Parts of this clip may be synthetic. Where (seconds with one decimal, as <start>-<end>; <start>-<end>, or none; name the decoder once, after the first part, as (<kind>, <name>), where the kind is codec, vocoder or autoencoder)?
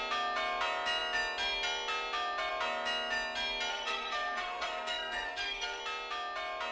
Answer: 3.7-5.8 (codec, SNAC)